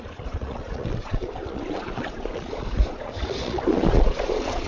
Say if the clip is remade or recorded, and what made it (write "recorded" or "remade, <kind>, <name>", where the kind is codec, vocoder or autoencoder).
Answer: remade, vocoder, Vocos